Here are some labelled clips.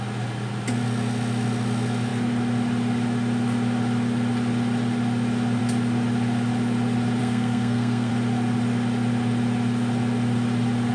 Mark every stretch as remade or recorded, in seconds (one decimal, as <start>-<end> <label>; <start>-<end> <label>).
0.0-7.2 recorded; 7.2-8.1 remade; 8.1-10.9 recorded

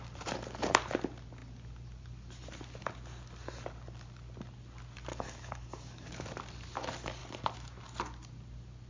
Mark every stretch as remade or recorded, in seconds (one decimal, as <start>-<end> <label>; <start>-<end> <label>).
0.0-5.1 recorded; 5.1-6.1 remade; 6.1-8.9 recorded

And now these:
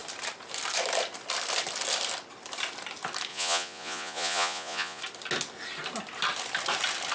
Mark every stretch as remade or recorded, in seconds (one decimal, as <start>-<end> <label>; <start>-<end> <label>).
0.0-3.3 recorded; 3.3-5.0 remade; 5.0-7.1 recorded